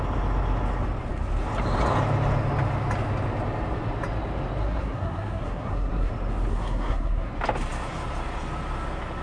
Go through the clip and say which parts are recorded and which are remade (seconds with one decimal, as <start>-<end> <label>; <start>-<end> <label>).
0.0-4.6 recorded; 4.6-6.1 remade; 6.1-6.5 recorded; 6.5-7.3 remade; 7.3-9.2 recorded